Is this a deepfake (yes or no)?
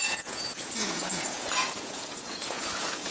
yes